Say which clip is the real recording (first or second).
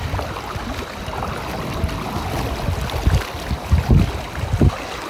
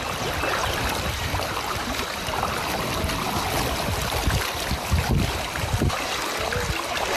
first